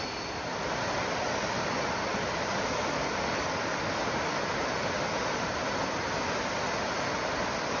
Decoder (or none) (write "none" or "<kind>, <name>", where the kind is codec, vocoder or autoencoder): none